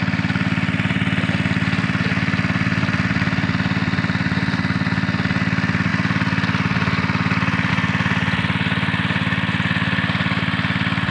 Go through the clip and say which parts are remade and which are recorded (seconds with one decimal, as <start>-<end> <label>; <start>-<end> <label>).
0.0-11.1 recorded